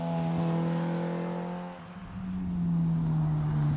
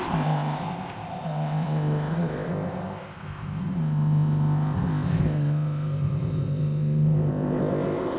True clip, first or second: first